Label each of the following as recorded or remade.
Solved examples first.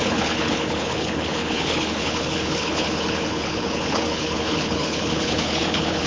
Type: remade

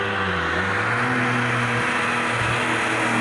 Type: recorded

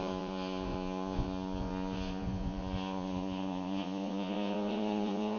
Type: remade